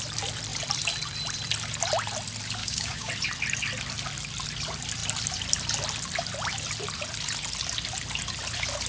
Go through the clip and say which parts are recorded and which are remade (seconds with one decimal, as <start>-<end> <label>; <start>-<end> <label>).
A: 0.0-2.6 recorded; 2.6-3.1 remade; 3.1-8.9 recorded